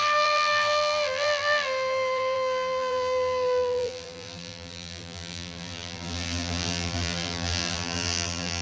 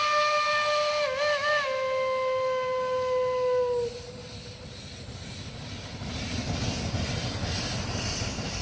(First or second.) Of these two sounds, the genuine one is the second